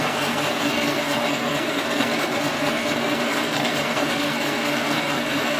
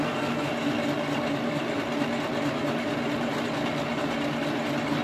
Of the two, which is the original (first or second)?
second